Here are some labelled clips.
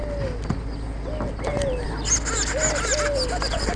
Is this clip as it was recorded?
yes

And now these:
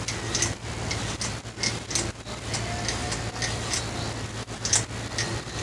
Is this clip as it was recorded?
yes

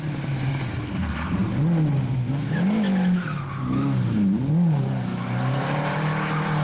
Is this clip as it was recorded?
yes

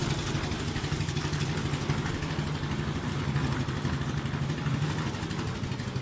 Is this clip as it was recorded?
yes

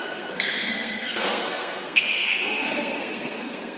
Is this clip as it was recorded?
no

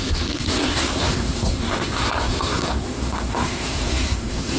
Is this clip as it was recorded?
no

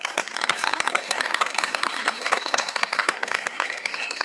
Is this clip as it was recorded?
no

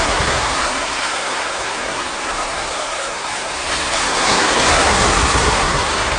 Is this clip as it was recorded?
no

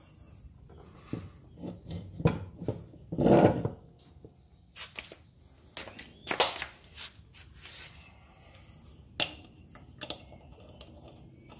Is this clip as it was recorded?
yes